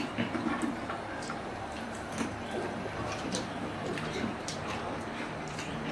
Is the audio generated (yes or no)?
yes